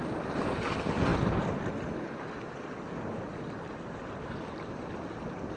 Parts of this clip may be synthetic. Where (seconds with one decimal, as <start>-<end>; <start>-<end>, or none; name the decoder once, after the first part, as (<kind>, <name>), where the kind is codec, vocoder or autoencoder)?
none